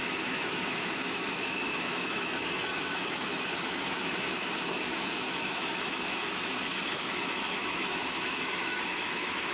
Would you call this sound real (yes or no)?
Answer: no